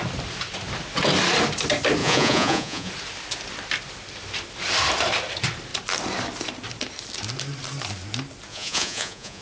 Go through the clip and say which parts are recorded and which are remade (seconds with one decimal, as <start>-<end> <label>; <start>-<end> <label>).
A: 0.0-2.0 recorded; 2.0-2.9 remade; 2.9-8.5 recorded; 8.5-9.4 remade